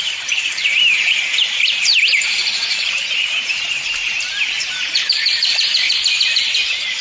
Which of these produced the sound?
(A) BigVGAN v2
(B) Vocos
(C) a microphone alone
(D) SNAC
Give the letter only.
A